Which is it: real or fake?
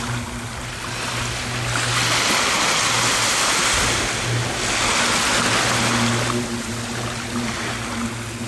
real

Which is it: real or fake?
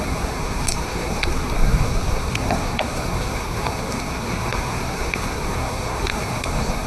fake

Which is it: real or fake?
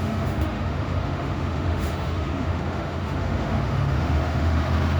fake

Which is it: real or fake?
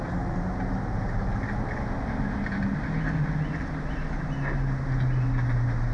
real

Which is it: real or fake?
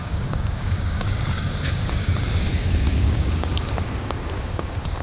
fake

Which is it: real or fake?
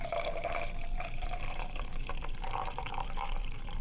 fake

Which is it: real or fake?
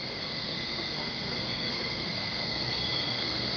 fake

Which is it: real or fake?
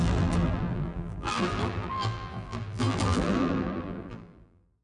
fake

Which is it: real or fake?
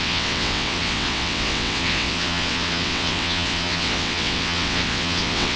fake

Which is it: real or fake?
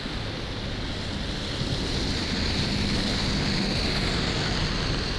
real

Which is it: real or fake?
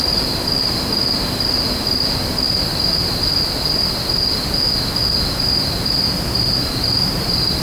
real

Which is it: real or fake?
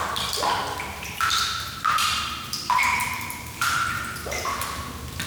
fake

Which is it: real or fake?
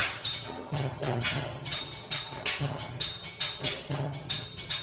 fake